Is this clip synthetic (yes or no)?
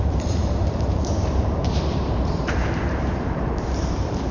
yes